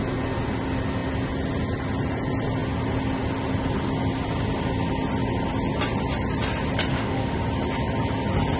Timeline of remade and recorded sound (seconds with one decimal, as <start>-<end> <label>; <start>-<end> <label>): 0.0-6.9 recorded; 6.9-7.4 remade; 7.4-8.6 recorded